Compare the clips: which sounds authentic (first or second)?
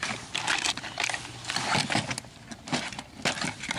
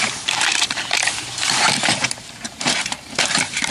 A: first